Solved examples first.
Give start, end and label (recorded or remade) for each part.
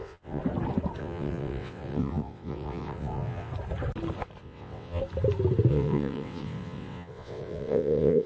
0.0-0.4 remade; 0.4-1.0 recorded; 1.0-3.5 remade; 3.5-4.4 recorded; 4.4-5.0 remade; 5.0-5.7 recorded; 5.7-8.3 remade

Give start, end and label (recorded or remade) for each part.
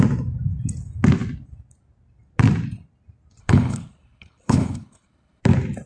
0.0-3.4 recorded; 3.4-5.4 remade; 5.4-5.9 recorded